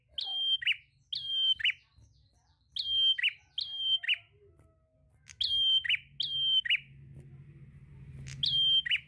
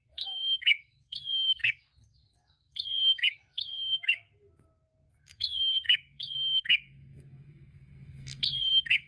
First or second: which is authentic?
first